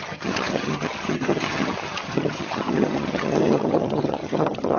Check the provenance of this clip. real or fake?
fake